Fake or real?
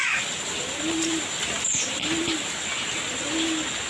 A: real